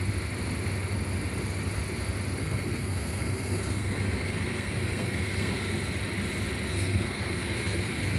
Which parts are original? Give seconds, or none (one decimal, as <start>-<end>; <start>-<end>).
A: 0.0-2.4; 5.7-6.7